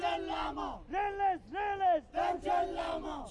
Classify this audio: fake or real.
real